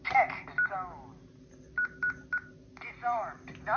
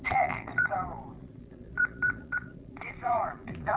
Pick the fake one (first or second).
second